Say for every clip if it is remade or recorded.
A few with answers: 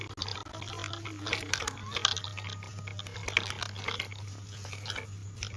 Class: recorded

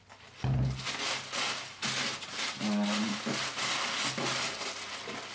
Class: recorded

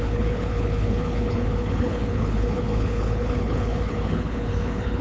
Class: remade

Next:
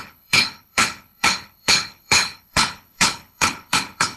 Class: remade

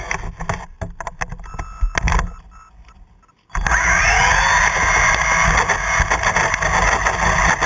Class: recorded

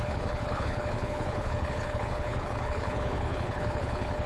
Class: remade